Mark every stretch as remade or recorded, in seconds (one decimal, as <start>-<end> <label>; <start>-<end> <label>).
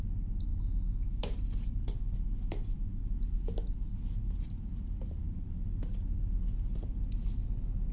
0.0-7.9 recorded